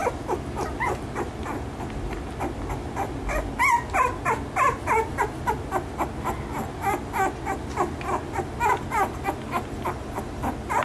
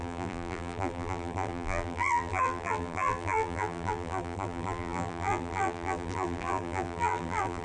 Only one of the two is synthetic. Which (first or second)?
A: second